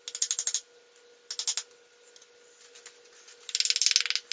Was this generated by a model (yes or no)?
no